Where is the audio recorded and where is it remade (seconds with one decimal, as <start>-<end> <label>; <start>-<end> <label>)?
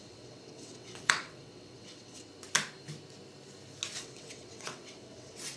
0.0-2.3 remade; 2.3-4.0 recorded; 4.0-5.6 remade